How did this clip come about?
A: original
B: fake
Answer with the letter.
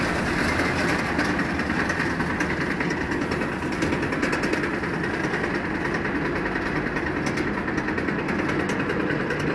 A